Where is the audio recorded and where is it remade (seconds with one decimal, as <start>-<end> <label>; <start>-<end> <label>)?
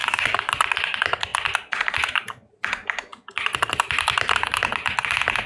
0.0-0.5 remade; 0.5-5.5 recorded